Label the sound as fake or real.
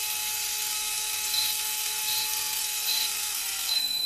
fake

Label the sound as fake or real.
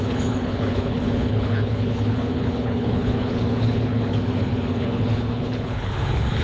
fake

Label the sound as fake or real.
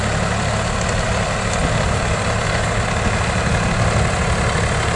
real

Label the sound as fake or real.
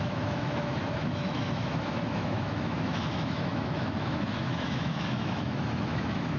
fake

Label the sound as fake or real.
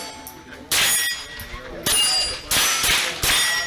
real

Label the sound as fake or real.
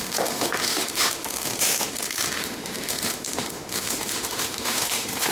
fake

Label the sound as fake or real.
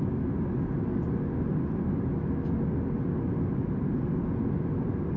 real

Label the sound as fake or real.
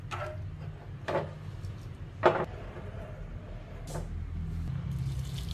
real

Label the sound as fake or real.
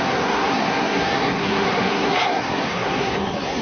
fake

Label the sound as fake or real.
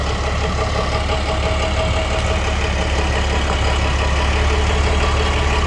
real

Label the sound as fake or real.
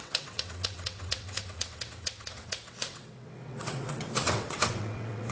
fake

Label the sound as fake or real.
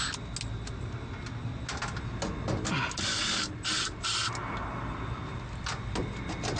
real